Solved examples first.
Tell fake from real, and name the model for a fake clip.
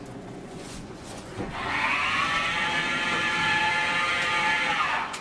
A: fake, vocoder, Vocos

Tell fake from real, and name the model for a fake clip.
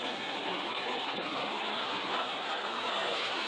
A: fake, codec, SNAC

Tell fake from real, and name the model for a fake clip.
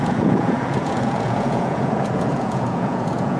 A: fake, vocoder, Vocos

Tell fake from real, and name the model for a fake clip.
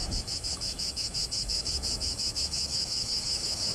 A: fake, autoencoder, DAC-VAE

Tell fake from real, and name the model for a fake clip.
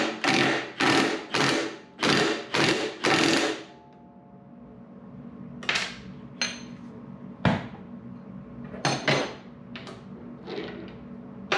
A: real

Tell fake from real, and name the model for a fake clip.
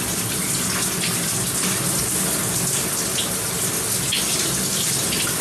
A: real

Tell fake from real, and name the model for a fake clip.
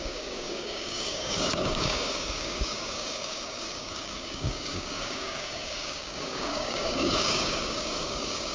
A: fake, codec, DAC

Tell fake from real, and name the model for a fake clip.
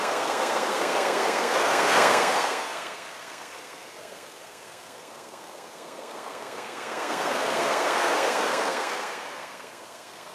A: fake, codec, SNAC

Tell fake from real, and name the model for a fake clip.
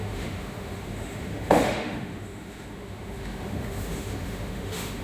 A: fake, autoencoder, DAC-VAE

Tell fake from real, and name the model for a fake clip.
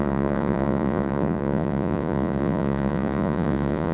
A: fake, vocoder, Vocos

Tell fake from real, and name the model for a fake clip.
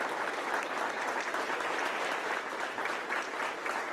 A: real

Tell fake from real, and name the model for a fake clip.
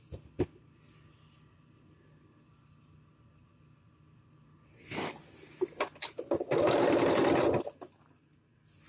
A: real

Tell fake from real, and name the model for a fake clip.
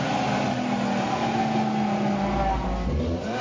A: real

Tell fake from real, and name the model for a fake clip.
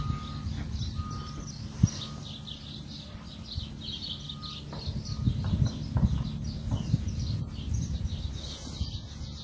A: real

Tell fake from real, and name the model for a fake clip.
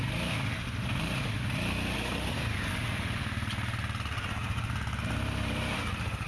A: real